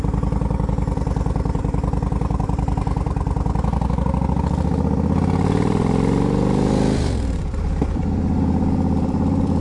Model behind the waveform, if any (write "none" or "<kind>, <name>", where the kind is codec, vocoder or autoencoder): vocoder, BigVGAN v2